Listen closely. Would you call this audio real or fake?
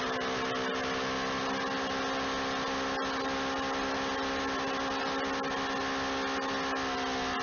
real